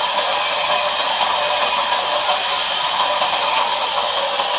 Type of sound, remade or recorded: recorded